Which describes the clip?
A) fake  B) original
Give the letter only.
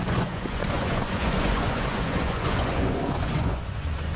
A